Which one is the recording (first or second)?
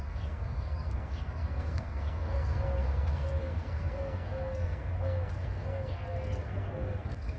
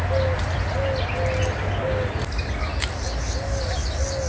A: second